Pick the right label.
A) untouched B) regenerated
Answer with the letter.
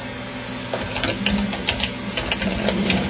A